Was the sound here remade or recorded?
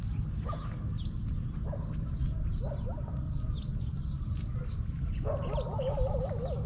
recorded